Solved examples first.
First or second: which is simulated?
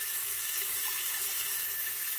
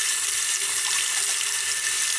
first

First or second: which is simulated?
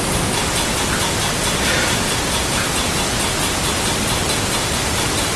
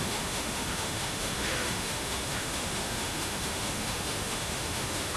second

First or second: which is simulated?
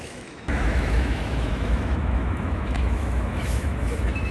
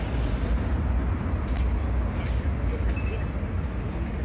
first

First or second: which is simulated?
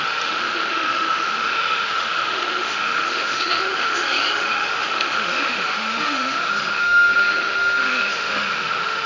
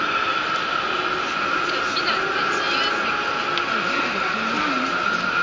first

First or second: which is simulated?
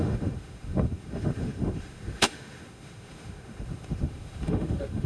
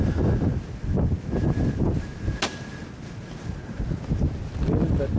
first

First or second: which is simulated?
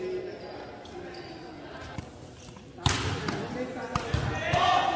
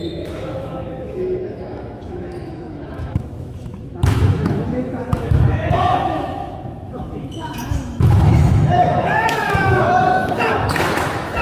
second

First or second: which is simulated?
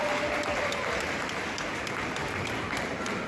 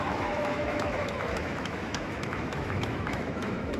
second